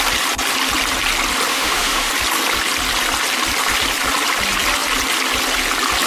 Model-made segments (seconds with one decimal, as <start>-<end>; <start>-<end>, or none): 1.5-2.1